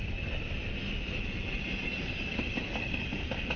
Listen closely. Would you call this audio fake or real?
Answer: real